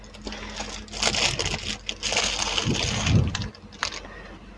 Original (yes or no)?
yes